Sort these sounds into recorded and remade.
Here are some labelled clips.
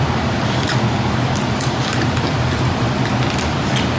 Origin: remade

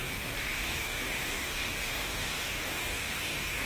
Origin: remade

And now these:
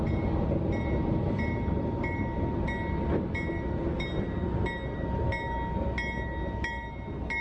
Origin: recorded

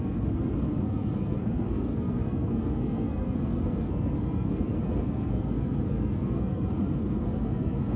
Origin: remade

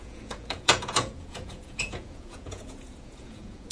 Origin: remade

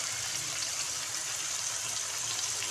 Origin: remade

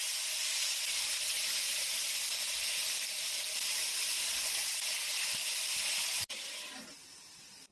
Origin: recorded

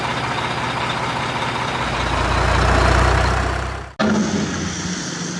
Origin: recorded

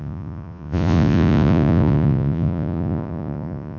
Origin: remade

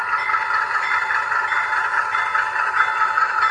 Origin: recorded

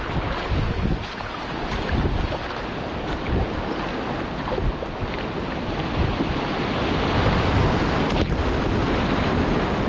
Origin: recorded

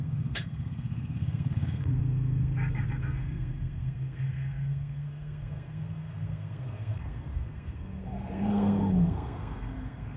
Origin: remade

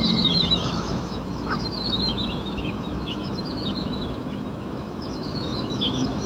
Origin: remade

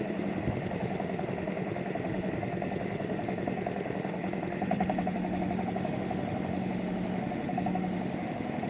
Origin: remade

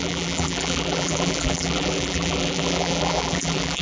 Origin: remade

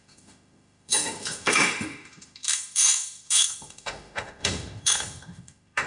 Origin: remade